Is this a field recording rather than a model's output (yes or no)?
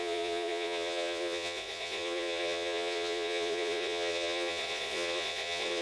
no